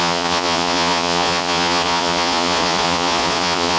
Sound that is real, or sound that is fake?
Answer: fake